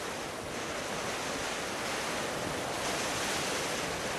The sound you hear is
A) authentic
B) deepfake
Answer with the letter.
A